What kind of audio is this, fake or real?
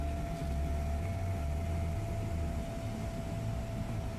real